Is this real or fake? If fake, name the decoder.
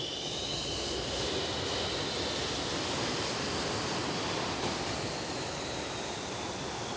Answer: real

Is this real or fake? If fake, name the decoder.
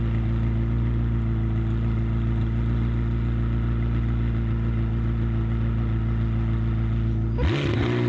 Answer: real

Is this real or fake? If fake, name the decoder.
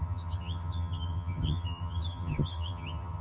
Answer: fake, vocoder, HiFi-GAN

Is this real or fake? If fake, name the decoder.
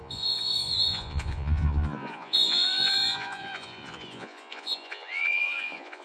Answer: fake, vocoder, Vocos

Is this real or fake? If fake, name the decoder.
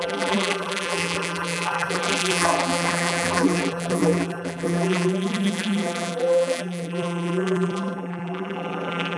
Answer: fake, vocoder, BigVGAN v2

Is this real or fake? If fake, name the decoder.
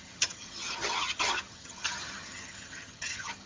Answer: fake, vocoder, HiFi-GAN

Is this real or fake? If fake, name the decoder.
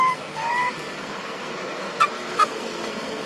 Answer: fake, codec, SNAC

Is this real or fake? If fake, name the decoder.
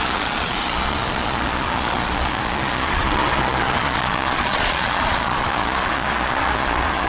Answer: fake, vocoder, Vocos